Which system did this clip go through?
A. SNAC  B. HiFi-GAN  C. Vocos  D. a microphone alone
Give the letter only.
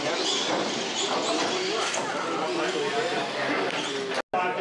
D